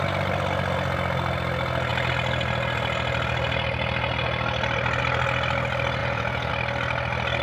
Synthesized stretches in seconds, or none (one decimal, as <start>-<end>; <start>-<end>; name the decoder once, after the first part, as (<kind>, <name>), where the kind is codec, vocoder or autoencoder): 6.0-6.5 (vocoder, Vocos)